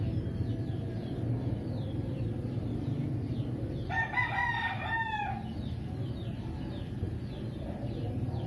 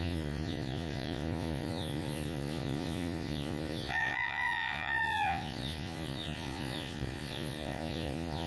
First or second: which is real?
first